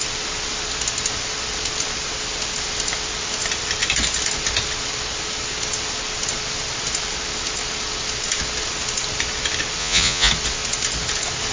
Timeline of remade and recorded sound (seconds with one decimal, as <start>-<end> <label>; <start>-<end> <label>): 0.0-9.8 recorded; 9.8-10.3 remade; 10.3-11.5 recorded